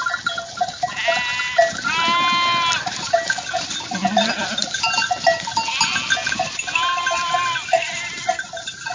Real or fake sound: real